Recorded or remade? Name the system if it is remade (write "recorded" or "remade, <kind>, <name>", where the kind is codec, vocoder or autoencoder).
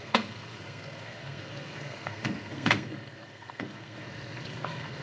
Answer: remade, codec, SNAC